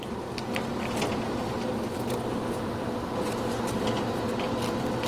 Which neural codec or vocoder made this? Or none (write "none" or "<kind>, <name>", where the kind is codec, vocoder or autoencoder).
none